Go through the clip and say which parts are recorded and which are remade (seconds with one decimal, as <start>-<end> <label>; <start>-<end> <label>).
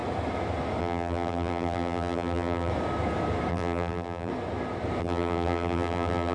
0.0-0.8 recorded; 0.8-2.7 remade; 2.7-3.5 recorded; 3.5-4.3 remade; 4.3-5.0 recorded; 5.0-6.3 remade